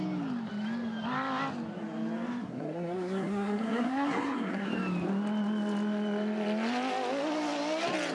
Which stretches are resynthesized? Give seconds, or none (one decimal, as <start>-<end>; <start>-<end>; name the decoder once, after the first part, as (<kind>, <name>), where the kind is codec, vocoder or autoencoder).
2.4-4.7 (codec, SNAC)